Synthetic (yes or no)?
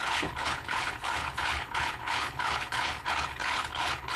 yes